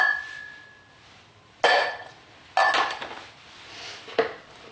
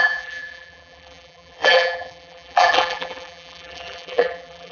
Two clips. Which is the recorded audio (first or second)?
first